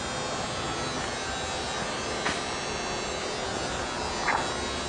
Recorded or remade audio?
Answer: recorded